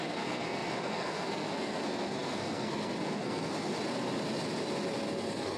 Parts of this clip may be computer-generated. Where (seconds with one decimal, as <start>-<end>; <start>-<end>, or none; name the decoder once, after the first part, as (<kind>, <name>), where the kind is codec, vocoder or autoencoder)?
0.0-3.7 (codec, SNAC); 5.1-5.6